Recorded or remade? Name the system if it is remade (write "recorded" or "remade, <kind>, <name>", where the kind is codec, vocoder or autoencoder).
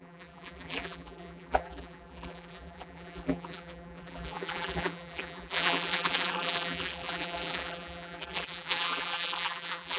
remade, vocoder, BigVGAN v2